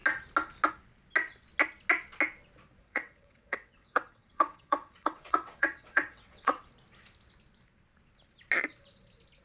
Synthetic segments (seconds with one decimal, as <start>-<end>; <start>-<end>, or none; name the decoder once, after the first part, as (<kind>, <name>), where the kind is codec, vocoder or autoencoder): 2.8-6.7 (vocoder, WaveNeXt)